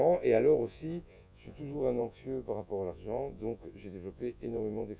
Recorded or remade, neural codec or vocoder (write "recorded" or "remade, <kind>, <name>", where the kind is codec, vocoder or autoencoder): remade, vocoder, Vocos